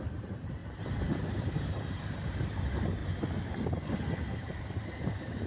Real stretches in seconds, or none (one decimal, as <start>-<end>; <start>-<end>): 3.0-4.3